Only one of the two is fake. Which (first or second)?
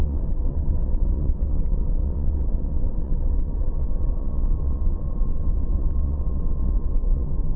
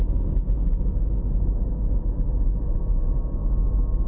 first